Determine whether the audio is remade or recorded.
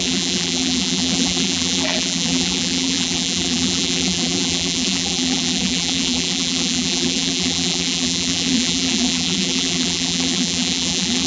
remade